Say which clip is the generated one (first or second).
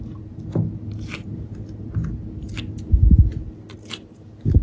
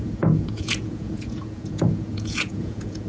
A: second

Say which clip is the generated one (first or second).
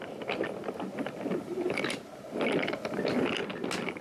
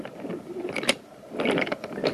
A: second